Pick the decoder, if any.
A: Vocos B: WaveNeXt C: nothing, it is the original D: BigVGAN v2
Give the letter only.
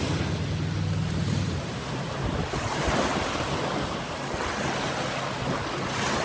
C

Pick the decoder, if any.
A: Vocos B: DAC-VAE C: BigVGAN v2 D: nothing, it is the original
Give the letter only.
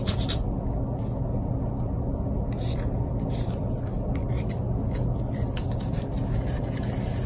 D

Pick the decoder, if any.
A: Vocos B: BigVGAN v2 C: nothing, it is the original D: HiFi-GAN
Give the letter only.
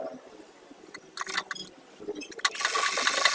C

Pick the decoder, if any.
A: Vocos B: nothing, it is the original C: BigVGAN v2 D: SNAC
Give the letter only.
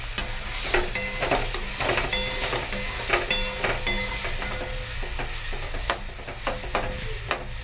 B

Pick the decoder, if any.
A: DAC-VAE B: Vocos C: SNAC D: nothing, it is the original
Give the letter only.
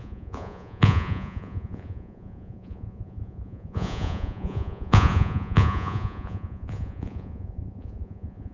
B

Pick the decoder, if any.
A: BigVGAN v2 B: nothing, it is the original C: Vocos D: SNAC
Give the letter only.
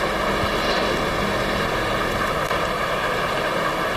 B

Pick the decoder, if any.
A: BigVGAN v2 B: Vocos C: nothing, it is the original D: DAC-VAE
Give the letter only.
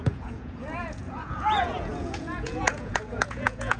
B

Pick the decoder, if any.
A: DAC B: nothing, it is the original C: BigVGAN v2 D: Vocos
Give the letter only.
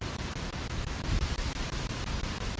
B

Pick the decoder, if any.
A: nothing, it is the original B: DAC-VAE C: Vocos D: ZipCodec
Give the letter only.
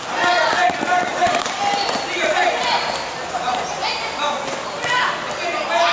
A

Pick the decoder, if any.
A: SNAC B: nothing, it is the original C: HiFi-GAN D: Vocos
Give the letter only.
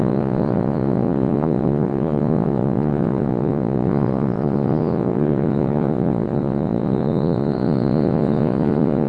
D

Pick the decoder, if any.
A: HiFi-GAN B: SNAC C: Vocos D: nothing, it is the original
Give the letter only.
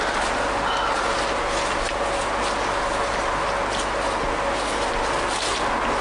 D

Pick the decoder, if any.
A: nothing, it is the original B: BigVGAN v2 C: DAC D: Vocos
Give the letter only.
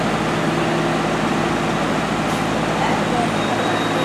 A